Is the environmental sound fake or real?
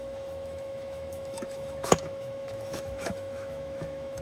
fake